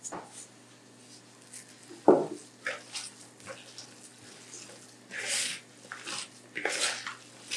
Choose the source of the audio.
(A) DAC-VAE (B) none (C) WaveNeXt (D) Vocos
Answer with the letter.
B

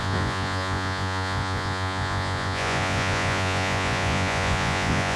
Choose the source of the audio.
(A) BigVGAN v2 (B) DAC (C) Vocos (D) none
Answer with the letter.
C